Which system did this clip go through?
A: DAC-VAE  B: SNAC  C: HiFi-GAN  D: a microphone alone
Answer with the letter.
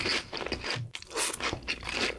D